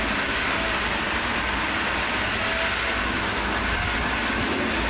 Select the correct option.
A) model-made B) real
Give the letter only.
B